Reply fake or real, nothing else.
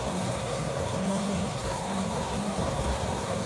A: fake